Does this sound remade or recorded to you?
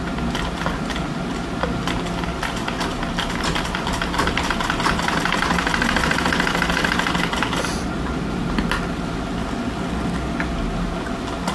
recorded